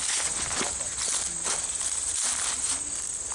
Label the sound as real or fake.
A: real